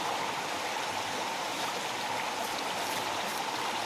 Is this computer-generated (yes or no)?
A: no